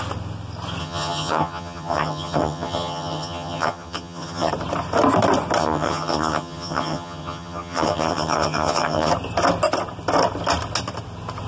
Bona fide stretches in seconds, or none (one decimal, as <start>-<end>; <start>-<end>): 0.0-0.8; 4.5-5.6; 9.1-11.5